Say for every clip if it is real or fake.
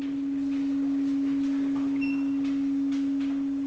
real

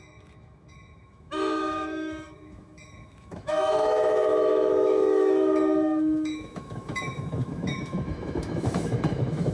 fake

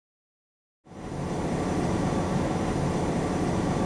real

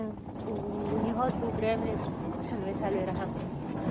real